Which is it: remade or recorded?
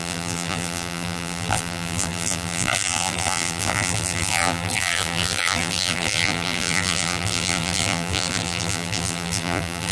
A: remade